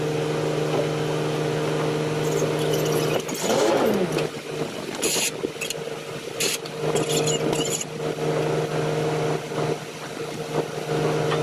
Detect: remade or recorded recorded